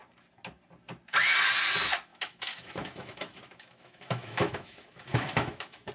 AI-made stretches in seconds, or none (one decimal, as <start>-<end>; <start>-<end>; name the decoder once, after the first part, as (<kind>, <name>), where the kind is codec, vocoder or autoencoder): 2.1-5.9 (autoencoder, DAC-VAE)